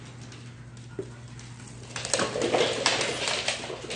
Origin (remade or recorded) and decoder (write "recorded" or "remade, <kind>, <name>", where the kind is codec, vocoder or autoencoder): recorded